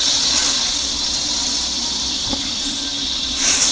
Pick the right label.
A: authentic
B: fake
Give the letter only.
A